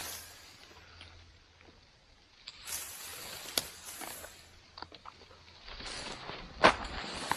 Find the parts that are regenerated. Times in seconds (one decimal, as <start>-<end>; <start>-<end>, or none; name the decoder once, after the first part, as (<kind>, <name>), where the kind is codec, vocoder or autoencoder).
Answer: none